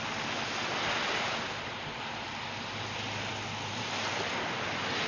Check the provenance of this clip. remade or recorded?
recorded